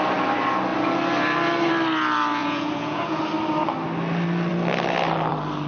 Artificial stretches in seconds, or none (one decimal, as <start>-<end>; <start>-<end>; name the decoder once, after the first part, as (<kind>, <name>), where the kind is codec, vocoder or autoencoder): 2.4-3.2 (vocoder, Vocos)